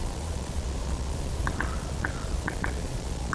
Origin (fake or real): fake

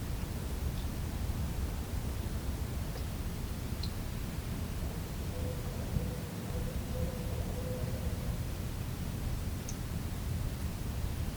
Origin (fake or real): fake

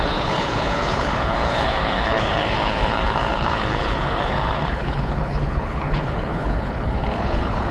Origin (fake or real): fake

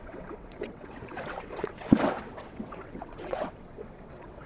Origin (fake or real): fake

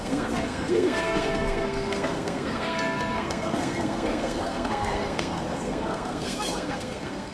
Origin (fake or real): fake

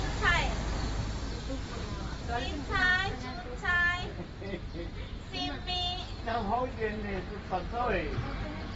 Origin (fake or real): real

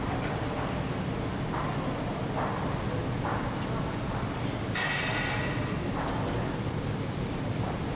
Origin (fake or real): real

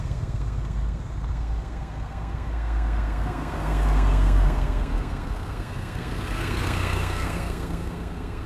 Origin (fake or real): fake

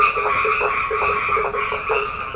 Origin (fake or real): real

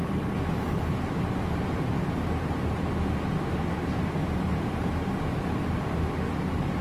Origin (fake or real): real